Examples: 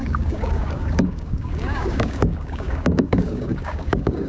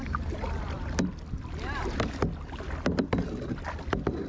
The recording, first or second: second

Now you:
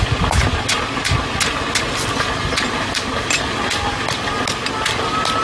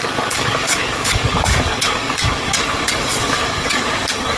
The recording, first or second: first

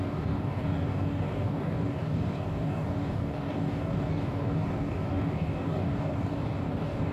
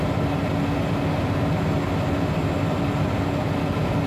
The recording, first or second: second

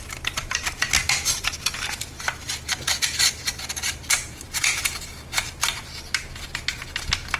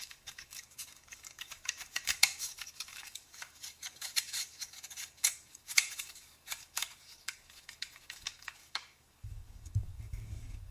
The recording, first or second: first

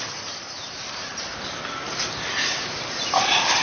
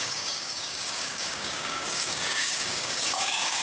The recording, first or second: first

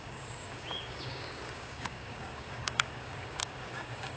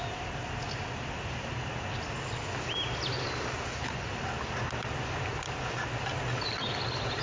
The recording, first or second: second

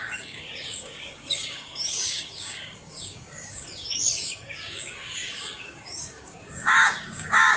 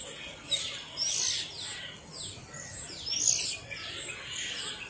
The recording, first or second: second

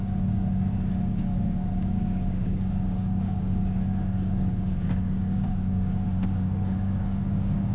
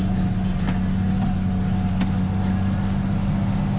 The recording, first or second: second